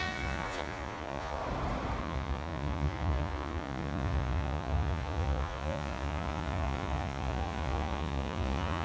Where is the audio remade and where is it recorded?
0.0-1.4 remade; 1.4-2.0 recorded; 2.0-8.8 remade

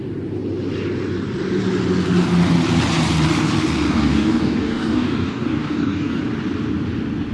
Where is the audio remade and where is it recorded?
0.0-3.9 recorded; 3.9-6.2 remade; 6.2-7.3 recorded

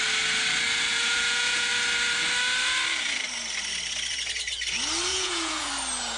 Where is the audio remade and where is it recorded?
0.0-0.9 recorded; 0.9-1.7 remade; 1.7-5.1 recorded; 5.1-5.7 remade; 5.7-6.2 recorded

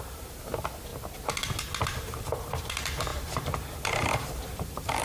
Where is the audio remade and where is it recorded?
0.0-0.9 remade; 0.9-2.0 recorded; 2.0-5.0 remade

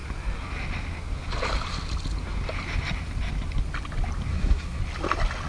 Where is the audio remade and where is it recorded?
0.0-4.3 recorded; 4.3-4.8 remade; 4.8-5.5 recorded

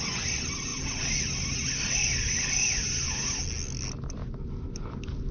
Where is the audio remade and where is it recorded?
0.0-5.3 recorded